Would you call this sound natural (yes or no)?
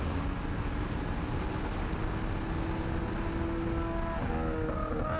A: yes